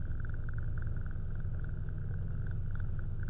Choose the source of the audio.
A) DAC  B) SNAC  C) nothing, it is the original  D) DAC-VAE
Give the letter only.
C